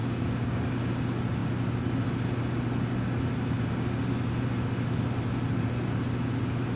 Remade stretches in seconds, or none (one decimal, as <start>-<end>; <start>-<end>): 0.0-0.6